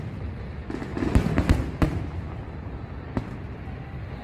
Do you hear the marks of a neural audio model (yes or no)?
no